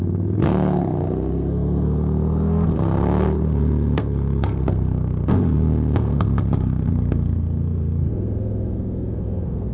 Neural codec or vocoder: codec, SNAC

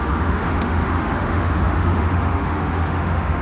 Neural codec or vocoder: autoencoder, DAC-VAE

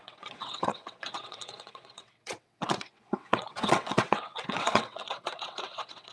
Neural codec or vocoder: vocoder, WaveNeXt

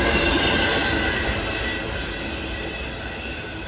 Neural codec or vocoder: none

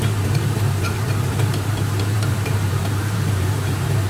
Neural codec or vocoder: vocoder, BigVGAN v2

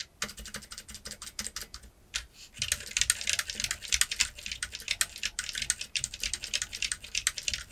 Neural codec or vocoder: none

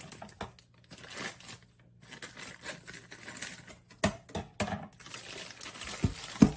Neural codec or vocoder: none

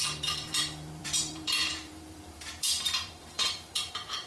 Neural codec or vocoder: vocoder, BigVGAN v2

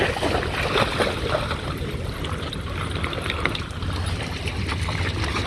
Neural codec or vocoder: none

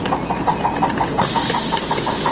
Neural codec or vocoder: none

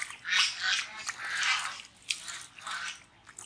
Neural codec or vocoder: none